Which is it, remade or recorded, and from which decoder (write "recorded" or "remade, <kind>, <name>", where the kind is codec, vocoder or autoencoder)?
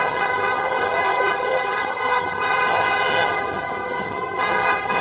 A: remade, vocoder, HiFi-GAN